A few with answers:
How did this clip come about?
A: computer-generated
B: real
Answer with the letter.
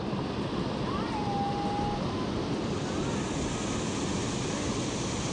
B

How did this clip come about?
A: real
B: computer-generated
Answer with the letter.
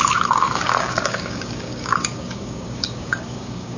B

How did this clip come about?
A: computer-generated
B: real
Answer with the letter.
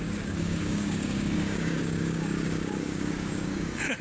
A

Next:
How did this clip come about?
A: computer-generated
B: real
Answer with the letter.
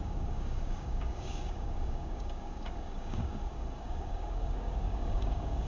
A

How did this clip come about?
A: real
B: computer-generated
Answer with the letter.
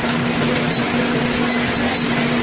A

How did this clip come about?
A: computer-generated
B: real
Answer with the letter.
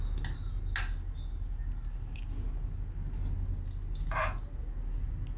B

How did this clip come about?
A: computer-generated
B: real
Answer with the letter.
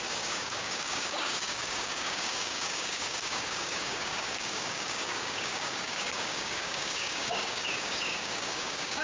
A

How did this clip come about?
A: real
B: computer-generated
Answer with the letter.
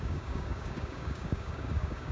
B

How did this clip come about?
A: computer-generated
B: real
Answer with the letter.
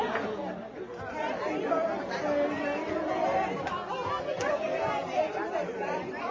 B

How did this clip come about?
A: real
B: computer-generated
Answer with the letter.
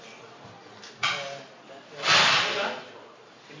A